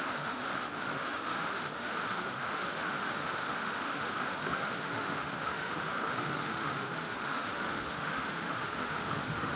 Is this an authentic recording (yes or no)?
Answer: no